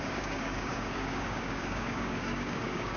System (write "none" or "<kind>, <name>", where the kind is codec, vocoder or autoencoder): codec, DAC